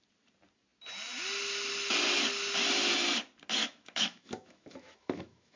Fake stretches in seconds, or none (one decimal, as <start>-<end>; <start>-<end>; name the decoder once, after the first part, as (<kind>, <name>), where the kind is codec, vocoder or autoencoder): 3.6-5.6 (autoencoder, DAC-VAE)